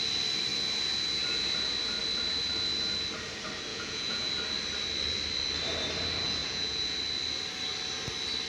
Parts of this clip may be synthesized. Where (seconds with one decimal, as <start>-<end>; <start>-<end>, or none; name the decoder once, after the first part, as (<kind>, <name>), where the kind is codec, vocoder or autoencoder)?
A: 3.7-4.3 (vocoder, Vocos); 6.4-7.0